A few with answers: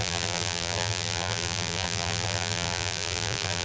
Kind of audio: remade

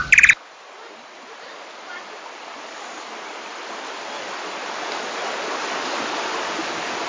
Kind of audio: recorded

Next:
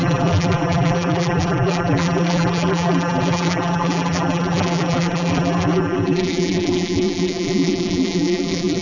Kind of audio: remade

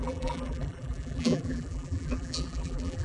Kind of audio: remade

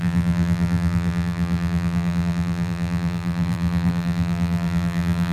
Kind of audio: remade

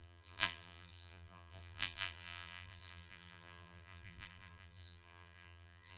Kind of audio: remade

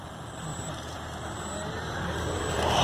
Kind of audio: remade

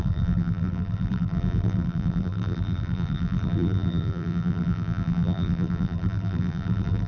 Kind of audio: remade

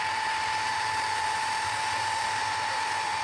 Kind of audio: remade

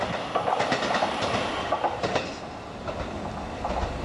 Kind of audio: recorded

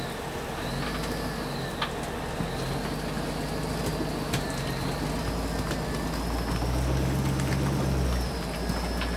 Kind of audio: recorded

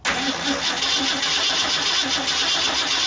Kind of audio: recorded